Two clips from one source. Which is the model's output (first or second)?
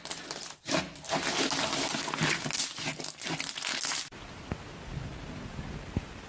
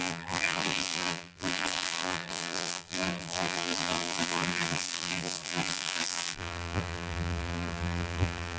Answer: second